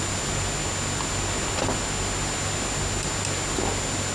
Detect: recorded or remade recorded